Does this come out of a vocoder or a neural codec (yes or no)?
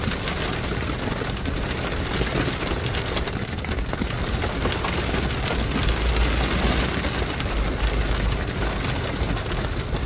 no